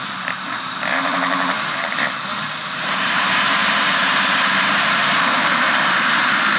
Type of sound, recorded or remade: remade